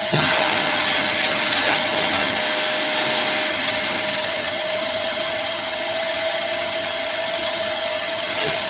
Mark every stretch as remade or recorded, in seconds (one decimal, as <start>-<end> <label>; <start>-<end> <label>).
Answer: 0.0-2.4 remade; 2.4-3.5 recorded; 3.5-8.7 remade